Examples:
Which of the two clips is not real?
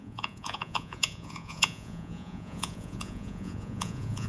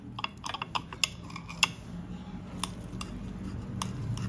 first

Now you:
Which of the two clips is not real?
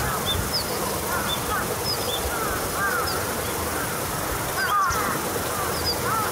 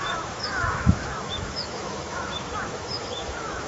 second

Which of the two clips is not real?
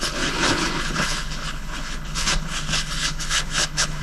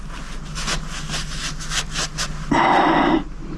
first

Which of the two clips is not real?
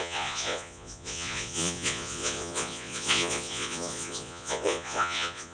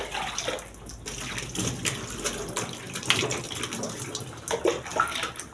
first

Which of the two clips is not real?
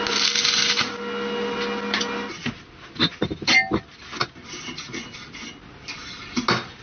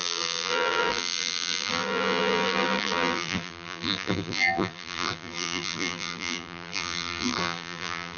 second